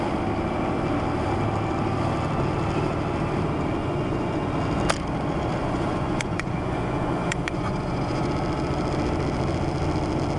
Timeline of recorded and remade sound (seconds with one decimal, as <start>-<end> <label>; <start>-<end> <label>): 0.0-3.8 recorded; 3.8-4.5 remade; 4.5-5.6 recorded; 5.6-8.3 remade; 8.3-10.4 recorded

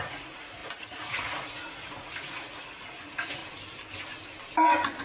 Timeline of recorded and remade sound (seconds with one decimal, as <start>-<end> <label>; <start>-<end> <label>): 0.0-3.4 remade; 3.4-5.0 recorded

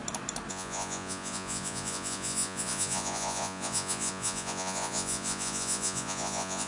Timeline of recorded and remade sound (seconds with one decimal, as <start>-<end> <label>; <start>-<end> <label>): 0.0-0.5 recorded; 0.5-6.7 remade

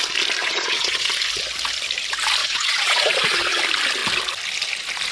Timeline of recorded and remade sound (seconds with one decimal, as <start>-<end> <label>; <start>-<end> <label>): 0.0-0.4 recorded; 0.4-1.1 remade; 1.1-2.4 recorded; 2.4-3.6 remade; 3.6-5.1 recorded

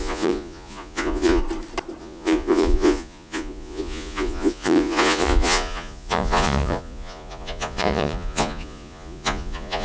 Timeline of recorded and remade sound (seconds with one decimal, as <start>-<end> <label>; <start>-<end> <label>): 0.0-1.4 remade; 1.4-2.0 recorded; 2.0-9.8 remade

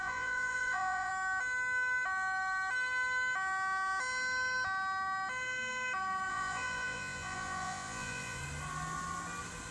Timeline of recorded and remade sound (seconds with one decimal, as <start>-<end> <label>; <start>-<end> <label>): 0.0-1.1 remade; 1.1-6.3 recorded; 6.3-8.4 remade; 8.4-9.7 recorded

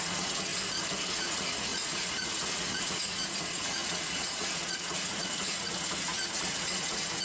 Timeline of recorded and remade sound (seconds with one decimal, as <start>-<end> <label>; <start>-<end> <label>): 0.0-0.5 remade; 0.5-1.1 recorded; 1.1-7.2 remade

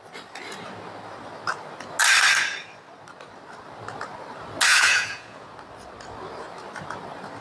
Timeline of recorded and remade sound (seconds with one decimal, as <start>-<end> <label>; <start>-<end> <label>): 0.0-4.7 recorded; 4.7-5.5 remade; 5.5-7.4 recorded